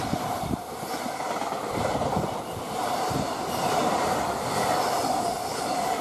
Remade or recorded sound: recorded